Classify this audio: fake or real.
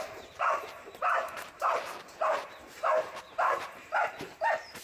fake